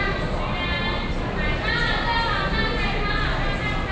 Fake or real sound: real